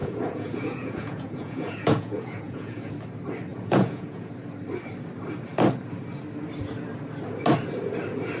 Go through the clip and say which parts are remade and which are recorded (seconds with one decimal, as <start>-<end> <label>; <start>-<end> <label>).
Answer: 0.0-2.9 remade; 2.9-3.5 recorded; 3.5-4.3 remade; 4.3-8.4 recorded